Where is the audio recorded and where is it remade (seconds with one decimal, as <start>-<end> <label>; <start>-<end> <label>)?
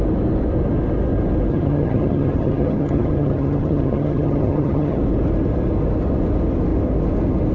0.0-1.5 recorded; 1.5-5.0 remade; 5.0-7.5 recorded